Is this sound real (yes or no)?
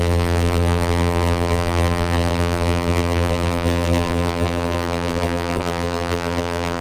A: no